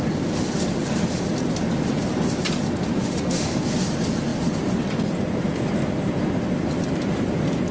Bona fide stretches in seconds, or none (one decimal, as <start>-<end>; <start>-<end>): 0.0-3.0; 3.6-7.7